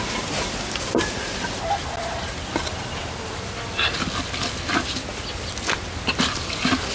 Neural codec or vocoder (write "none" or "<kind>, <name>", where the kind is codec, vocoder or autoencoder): none